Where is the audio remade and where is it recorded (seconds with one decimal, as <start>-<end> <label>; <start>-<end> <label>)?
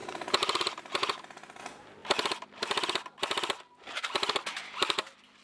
0.0-4.0 recorded; 4.0-5.4 remade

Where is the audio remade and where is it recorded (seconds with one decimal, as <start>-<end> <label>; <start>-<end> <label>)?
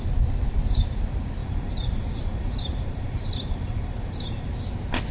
0.0-1.4 recorded; 1.4-4.5 remade; 4.5-5.1 recorded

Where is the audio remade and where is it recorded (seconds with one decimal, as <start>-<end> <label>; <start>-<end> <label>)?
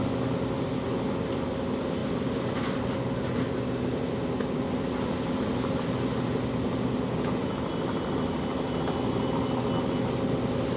0.0-2.0 recorded; 2.0-2.8 remade; 2.8-10.8 recorded